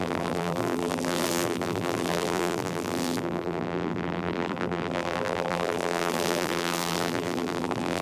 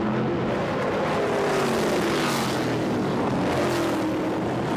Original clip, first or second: second